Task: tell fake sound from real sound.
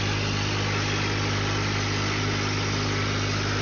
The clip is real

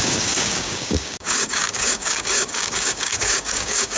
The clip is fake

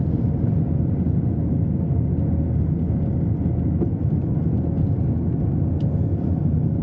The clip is real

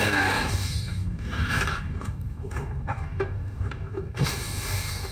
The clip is fake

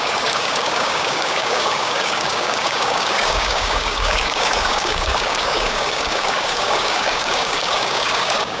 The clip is fake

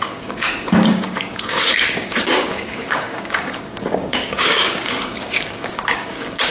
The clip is fake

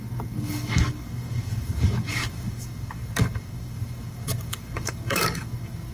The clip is fake